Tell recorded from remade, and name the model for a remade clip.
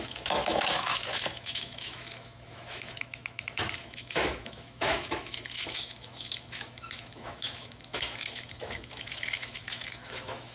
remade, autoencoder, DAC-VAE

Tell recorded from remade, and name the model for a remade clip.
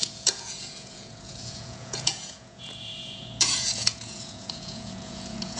remade, vocoder, Vocos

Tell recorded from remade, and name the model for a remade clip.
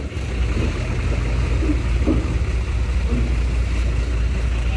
recorded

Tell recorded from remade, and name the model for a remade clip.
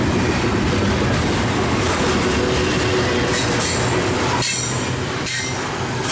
recorded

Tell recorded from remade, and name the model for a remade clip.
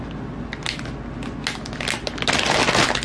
recorded